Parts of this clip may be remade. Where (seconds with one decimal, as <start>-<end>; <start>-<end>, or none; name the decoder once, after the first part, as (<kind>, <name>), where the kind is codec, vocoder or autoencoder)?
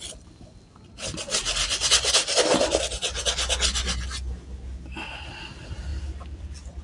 5.9-6.8 (vocoder, BigVGAN v2)